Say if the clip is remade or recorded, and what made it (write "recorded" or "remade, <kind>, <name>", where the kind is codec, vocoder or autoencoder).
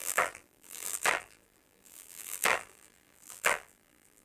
remade, vocoder, BigVGAN v2